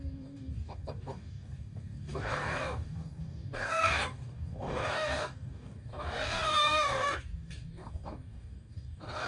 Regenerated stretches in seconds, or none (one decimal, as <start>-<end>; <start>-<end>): 0.0-9.3